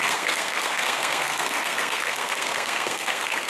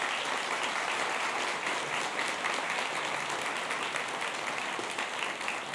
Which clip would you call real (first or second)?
second